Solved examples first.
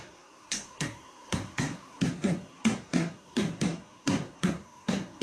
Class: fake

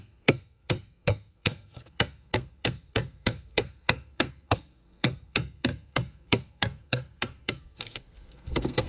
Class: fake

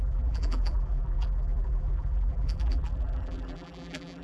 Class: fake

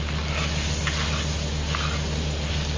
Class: real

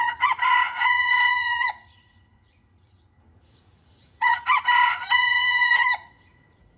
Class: fake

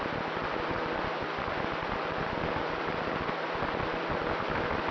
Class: fake